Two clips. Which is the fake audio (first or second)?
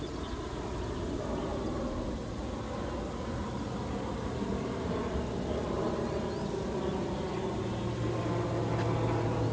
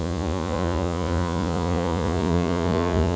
second